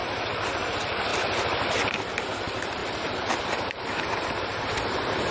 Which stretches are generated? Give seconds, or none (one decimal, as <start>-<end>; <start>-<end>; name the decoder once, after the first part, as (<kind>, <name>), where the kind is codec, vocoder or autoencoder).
0.0-1.1 (vocoder, BigVGAN v2); 2.4-5.3

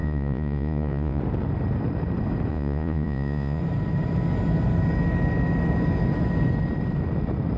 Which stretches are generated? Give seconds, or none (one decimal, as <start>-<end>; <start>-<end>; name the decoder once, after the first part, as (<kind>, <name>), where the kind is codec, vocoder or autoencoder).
0.0-1.2 (vocoder, Vocos); 2.5-3.6

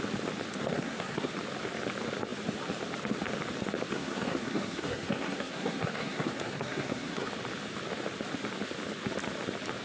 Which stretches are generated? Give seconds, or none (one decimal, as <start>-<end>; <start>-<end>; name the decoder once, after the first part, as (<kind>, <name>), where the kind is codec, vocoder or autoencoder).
0.6-1.3 (codec, SNAC); 3.9-7.3

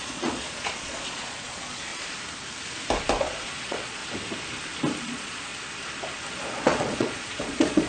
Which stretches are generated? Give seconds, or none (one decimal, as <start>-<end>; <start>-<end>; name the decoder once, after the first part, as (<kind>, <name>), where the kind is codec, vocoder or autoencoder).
0.0-1.9 (vocoder, Vocos); 3.2-4.0; 5.0-5.5; 6.3-7.9